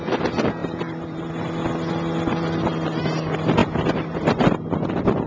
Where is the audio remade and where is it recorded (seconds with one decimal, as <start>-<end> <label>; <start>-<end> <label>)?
0.0-0.6 recorded; 0.6-1.3 remade; 1.3-3.6 recorded; 3.6-4.3 remade; 4.3-5.3 recorded

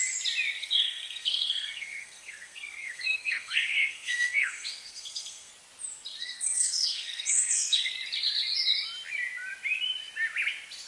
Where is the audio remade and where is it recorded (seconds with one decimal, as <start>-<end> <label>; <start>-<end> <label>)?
0.0-0.6 recorded; 0.6-5.5 remade; 5.5-6.2 recorded; 6.2-7.9 remade; 7.9-10.9 recorded

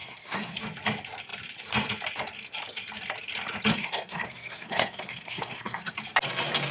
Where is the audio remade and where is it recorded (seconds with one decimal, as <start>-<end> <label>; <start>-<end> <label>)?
0.0-0.6 remade; 0.6-3.7 recorded; 3.7-5.9 remade; 5.9-6.7 recorded

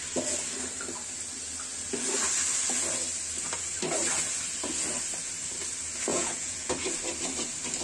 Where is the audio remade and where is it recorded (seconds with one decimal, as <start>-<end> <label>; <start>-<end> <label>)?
0.0-6.1 recorded; 6.1-6.7 remade; 6.7-7.8 recorded

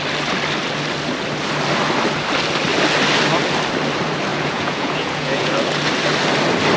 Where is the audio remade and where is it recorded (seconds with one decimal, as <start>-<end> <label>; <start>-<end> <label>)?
0.0-4.3 recorded; 4.3-5.5 remade; 5.5-6.8 recorded

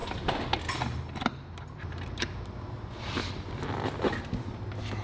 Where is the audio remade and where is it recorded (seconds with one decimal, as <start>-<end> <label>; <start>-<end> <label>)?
0.0-5.0 recorded